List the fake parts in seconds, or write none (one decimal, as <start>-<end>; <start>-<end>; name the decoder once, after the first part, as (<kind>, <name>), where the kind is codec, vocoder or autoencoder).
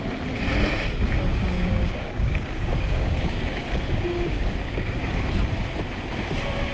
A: 1.3-5.3 (codec, DAC)